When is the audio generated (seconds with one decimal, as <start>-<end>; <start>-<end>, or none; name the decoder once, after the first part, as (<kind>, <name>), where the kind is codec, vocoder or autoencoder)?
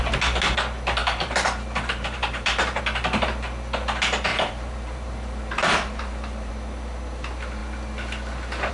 1.0-2.8 (vocoder, BigVGAN v2); 4.3-6.5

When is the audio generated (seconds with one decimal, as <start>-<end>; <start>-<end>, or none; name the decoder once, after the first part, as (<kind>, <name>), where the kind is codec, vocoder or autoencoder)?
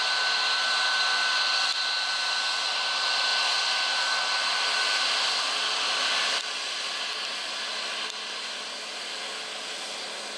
none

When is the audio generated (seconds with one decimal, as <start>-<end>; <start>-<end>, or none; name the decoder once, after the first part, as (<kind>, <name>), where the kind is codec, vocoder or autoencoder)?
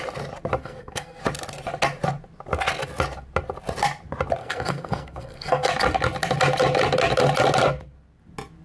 0.6-1.2 (codec, SNAC); 4.4-5.7